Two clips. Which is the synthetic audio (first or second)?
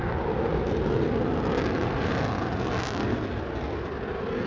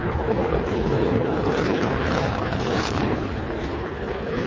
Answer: second